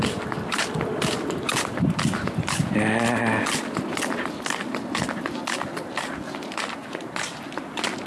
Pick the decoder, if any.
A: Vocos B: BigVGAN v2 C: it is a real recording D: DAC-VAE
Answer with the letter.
C